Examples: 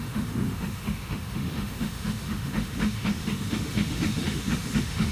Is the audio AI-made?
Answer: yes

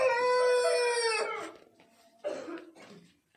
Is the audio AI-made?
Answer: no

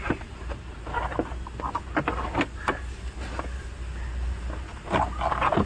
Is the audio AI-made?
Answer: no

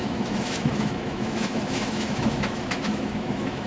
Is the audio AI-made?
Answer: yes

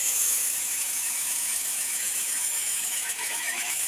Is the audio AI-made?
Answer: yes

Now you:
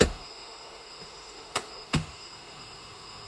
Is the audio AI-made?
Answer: yes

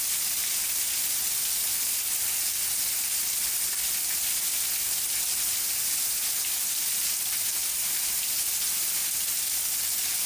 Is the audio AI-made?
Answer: no